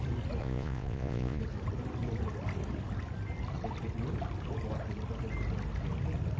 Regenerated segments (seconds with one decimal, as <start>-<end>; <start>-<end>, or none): 0.4-1.4